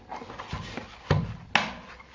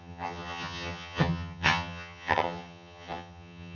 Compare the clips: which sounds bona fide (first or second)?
first